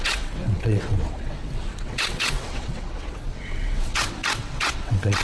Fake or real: fake